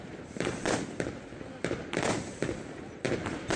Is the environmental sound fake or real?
real